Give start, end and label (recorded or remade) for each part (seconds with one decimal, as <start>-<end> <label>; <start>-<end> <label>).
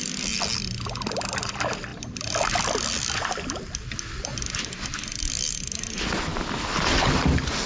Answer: 0.0-7.7 recorded